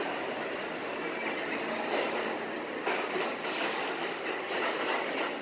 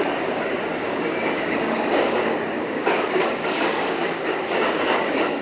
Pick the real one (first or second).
first